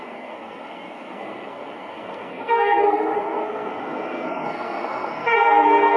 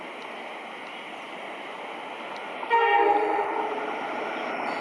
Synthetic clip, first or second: first